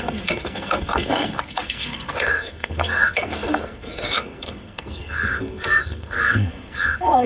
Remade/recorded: remade